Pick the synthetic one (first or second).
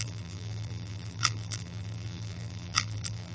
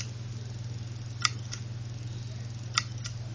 first